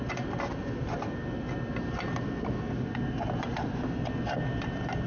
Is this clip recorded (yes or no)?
yes